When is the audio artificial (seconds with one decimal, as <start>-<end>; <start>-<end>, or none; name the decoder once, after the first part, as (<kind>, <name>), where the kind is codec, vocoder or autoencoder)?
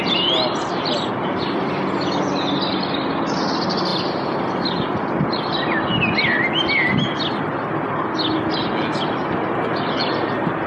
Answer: none